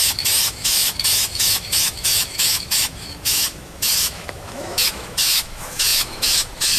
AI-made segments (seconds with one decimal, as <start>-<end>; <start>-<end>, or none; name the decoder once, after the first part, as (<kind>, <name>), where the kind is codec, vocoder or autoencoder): 0.0-6.8 (autoencoder, DAC-VAE)